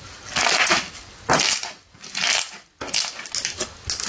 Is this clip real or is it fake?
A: real